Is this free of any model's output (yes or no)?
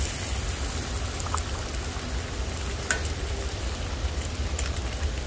yes